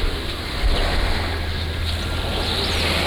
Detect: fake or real real